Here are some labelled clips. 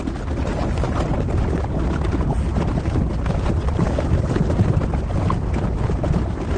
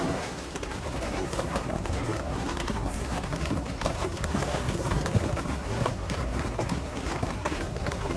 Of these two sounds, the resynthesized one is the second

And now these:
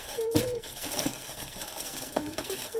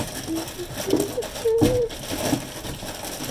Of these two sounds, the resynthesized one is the first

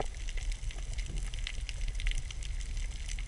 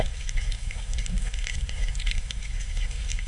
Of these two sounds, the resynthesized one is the second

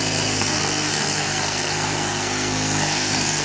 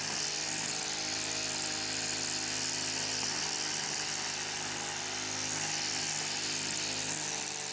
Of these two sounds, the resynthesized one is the first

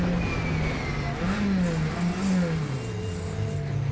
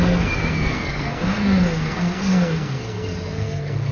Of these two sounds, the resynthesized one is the second